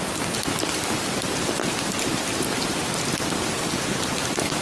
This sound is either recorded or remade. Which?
recorded